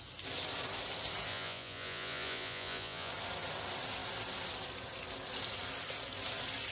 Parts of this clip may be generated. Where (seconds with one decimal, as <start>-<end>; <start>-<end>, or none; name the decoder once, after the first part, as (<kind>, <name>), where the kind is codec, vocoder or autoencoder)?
1.3-3.1 (vocoder, Vocos)